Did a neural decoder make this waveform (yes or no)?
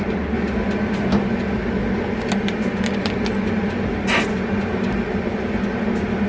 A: no